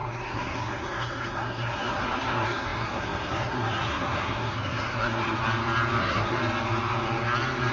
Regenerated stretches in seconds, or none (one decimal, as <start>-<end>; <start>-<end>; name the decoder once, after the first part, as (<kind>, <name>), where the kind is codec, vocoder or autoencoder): 0.0-5.4 (codec, SNAC); 6.0-6.4